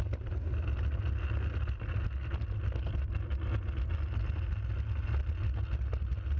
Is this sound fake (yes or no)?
no